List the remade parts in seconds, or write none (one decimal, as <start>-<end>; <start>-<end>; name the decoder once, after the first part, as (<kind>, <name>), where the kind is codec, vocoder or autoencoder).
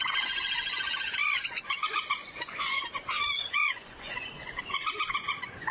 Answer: 0.0-5.7 (vocoder, Vocos)